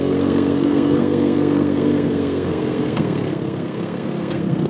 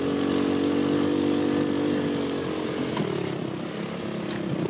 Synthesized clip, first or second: first